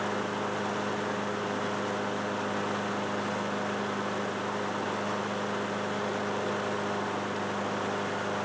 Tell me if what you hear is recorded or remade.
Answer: recorded